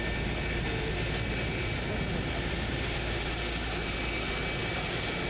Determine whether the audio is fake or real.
real